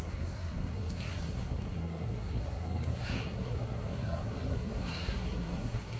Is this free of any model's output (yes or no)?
no